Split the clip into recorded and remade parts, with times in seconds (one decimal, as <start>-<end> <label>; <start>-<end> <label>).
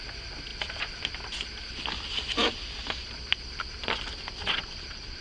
0.0-4.4 recorded; 4.4-5.2 remade